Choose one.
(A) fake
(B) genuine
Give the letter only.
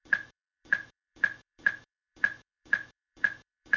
A